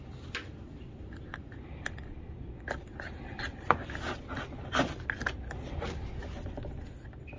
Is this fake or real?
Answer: real